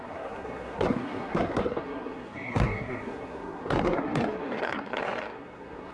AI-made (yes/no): yes